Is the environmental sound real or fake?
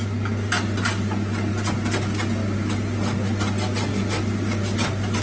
real